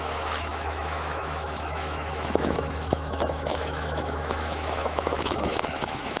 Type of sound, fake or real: fake